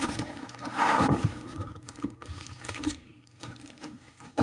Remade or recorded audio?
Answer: remade